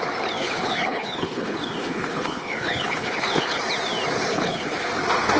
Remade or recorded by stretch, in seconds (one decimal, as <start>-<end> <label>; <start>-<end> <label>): 0.0-0.4 recorded; 0.4-3.6 remade; 3.6-4.3 recorded; 4.3-4.9 remade; 4.9-5.4 recorded